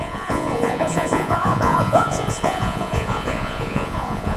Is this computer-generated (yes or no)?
yes